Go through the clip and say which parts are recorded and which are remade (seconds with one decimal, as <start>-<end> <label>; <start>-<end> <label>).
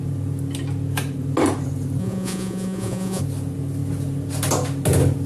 0.0-2.0 recorded; 2.0-3.2 remade; 3.2-5.3 recorded